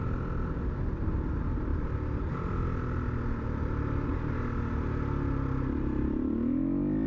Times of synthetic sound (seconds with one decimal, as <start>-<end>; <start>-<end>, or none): none